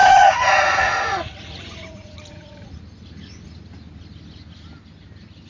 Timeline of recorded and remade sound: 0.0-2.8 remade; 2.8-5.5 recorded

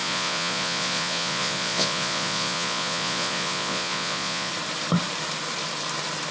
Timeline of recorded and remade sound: 0.0-4.5 remade; 4.5-6.3 recorded

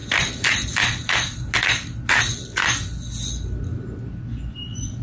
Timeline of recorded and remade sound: 0.0-5.0 recorded

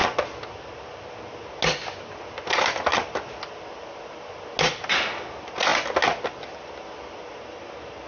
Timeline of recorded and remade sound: 0.0-8.1 recorded

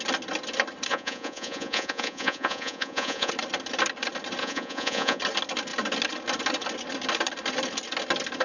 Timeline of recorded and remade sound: 0.0-0.9 recorded; 0.9-3.3 remade; 3.3-4.4 recorded; 4.4-5.2 remade; 5.2-8.4 recorded

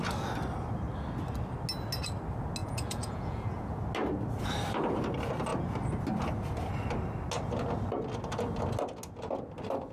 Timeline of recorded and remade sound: 0.0-2.6 recorded; 2.6-3.8 remade; 3.8-9.9 recorded

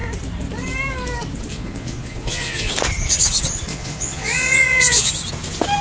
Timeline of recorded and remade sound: 0.0-1.5 recorded; 1.5-2.7 remade; 2.7-3.7 recorded; 3.7-5.1 remade; 5.1-5.8 recorded